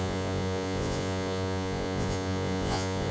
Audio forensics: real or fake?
fake